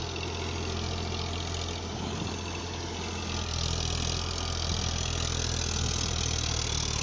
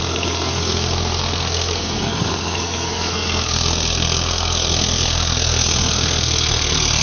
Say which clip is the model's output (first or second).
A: second